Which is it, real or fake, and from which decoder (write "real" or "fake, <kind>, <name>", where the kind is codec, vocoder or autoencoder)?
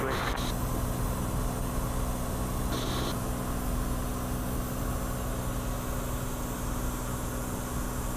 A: real